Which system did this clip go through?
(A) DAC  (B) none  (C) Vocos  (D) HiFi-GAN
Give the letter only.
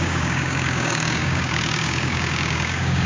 A